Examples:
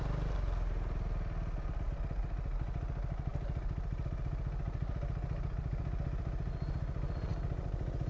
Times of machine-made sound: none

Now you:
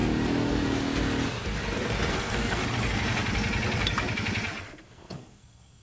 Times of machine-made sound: 2.1-2.6; 4.6-5.8

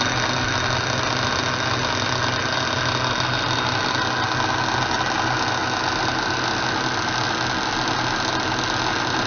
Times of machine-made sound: none

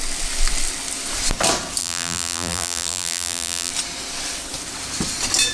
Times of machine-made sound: 1.8-3.7

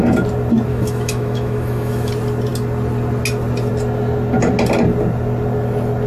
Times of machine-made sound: 0.7-2.1